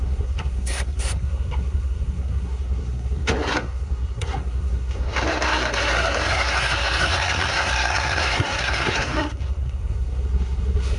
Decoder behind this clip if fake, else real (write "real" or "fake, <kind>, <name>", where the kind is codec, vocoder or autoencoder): fake, codec, SNAC